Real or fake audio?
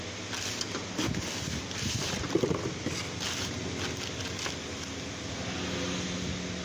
real